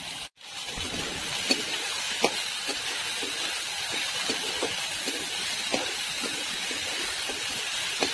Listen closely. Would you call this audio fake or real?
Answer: fake